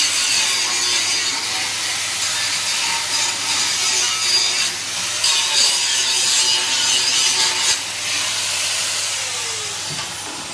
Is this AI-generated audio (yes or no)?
no